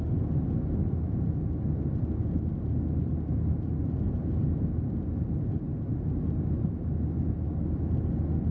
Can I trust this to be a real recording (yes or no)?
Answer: yes